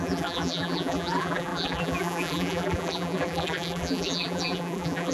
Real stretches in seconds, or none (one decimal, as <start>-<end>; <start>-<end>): none